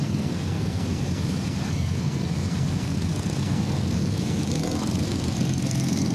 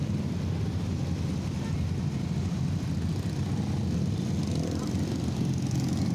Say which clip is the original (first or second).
second